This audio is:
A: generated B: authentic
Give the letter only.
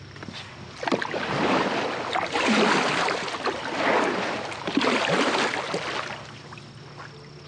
B